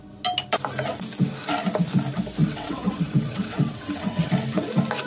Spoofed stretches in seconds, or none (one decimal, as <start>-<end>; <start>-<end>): 2.4-4.3